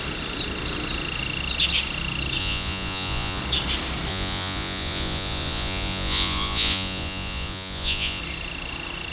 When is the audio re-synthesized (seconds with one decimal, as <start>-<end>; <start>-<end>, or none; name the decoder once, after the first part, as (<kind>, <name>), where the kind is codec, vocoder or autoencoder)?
2.4-3.4 (vocoder, Vocos); 4.1-8.2